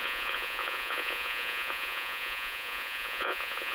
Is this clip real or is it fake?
fake